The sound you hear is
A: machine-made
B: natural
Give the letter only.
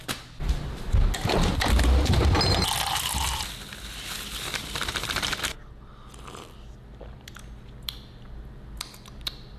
B